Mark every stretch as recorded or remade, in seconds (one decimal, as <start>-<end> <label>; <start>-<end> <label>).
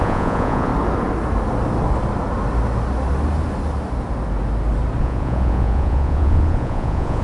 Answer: 0.0-0.7 remade; 0.7-5.0 recorded; 5.0-7.2 remade